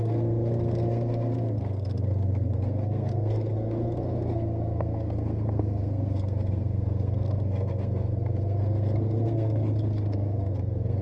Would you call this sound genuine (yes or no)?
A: no